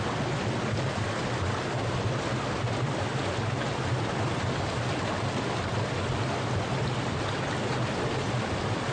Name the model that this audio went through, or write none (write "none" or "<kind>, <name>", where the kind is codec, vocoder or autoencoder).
none